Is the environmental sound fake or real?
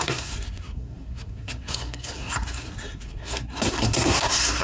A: fake